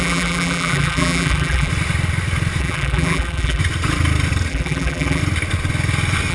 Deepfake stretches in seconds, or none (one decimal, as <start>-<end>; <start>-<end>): 0.0-1.7; 2.6-3.6; 4.5-5.2